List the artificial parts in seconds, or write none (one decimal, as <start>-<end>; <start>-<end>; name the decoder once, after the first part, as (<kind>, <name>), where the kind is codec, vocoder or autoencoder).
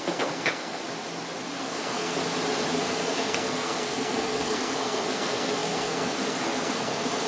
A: 0.0-0.8 (codec, SNAC); 1.6-2.2; 2.8-7.3